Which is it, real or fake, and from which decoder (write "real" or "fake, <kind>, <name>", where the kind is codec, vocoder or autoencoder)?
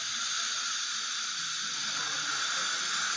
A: real